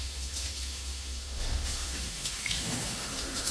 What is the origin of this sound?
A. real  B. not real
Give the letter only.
B